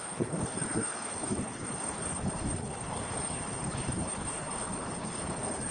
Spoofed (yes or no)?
yes